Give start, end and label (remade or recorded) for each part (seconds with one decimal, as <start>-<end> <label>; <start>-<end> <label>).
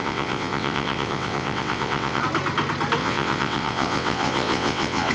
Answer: 0.0-2.2 remade; 2.2-3.0 recorded; 3.0-5.1 remade